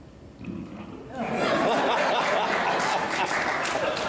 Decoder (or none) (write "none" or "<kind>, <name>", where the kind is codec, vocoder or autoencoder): none